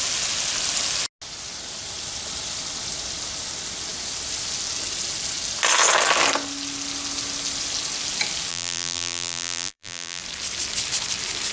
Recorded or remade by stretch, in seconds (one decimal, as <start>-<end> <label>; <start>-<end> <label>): 0.0-8.5 recorded; 8.5-10.2 remade; 10.2-11.5 recorded